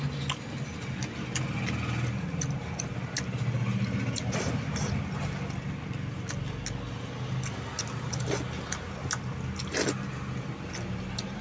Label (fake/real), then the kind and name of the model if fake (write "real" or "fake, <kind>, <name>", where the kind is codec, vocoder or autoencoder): real